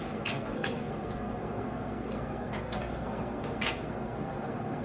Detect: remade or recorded remade